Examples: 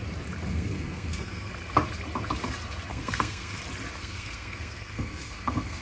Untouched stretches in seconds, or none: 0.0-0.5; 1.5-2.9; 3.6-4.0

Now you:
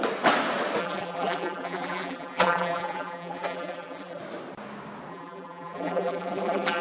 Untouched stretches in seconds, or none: 0.0-0.8; 4.2-5.1

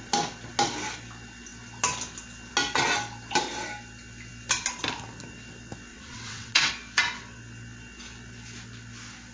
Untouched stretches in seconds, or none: 0.0-5.9; 6.7-9.3

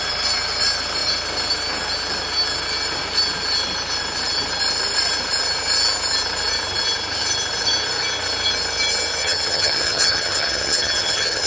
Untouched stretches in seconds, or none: 0.0-9.2